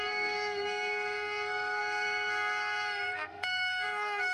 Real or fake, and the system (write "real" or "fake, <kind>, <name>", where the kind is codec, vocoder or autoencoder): fake, codec, SNAC